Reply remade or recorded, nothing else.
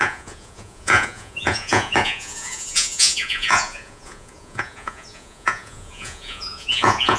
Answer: remade